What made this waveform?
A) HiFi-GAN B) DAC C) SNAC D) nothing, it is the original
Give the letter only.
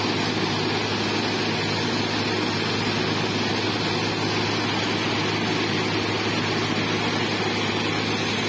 D